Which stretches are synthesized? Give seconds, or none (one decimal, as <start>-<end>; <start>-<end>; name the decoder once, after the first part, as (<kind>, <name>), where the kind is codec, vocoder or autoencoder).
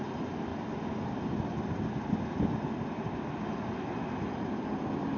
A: none